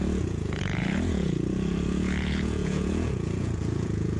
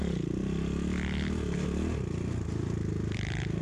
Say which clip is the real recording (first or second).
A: second